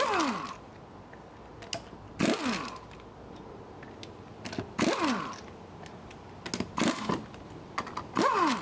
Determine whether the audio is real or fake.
real